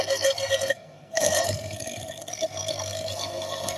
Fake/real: fake